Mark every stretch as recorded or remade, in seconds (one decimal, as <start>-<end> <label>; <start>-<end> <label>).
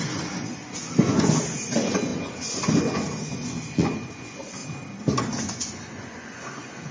0.0-4.6 remade; 4.6-5.4 recorded; 5.4-6.9 remade